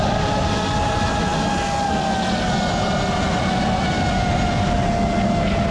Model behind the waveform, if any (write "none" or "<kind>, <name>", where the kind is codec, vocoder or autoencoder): none